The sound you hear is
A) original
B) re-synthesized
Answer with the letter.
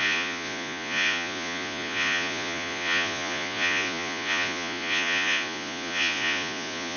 B